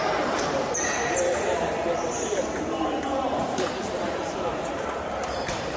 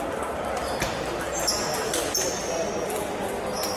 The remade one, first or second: first